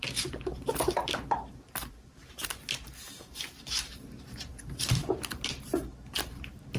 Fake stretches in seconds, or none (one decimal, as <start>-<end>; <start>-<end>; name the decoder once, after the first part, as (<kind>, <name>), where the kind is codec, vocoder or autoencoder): 0.0-6.8 (vocoder, BigVGAN v2)